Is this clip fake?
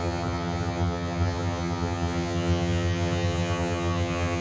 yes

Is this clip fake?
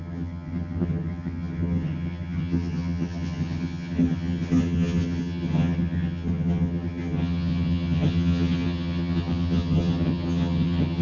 yes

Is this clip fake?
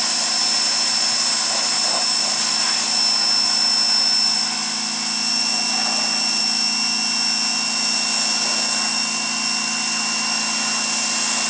no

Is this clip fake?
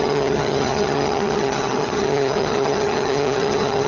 yes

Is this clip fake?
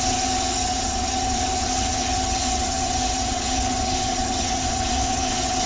yes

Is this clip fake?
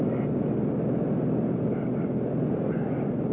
no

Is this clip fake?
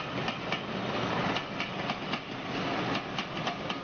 no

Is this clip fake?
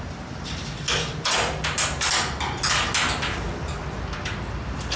no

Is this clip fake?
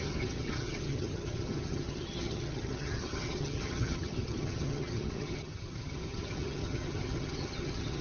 yes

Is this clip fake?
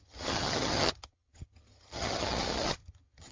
yes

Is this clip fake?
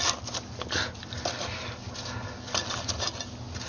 no